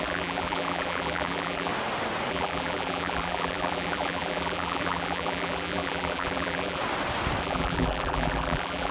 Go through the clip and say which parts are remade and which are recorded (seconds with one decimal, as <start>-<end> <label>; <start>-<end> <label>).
0.0-1.7 remade; 1.7-2.3 recorded; 2.3-6.8 remade; 6.8-7.4 recorded; 7.4-8.9 remade